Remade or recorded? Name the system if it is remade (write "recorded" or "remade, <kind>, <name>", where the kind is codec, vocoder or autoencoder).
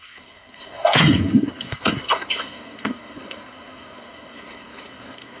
remade, codec, SNAC